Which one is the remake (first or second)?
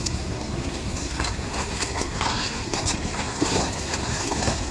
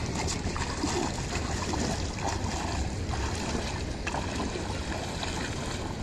first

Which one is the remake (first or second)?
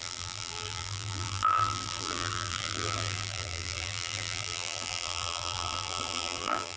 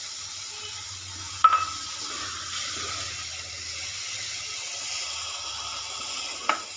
first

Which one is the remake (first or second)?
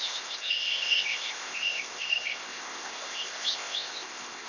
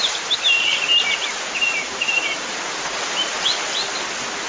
first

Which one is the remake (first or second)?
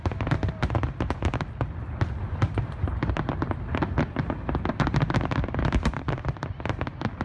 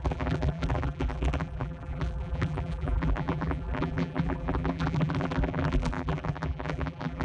second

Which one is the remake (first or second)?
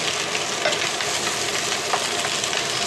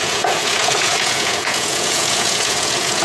second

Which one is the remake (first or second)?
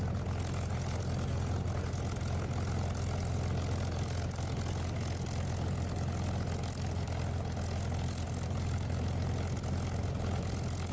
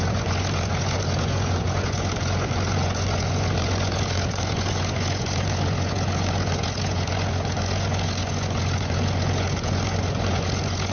second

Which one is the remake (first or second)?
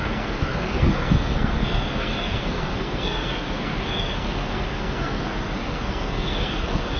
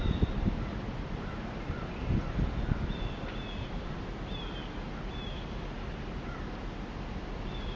first